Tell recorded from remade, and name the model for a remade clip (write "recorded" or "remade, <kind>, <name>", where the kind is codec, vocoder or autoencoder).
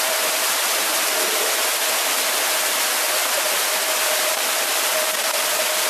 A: recorded